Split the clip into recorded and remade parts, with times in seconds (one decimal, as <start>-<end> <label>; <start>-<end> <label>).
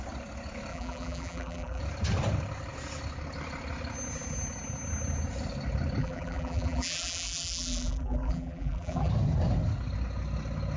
0.0-0.7 recorded; 0.7-1.8 remade; 1.8-6.0 recorded; 6.0-9.1 remade; 9.1-10.8 recorded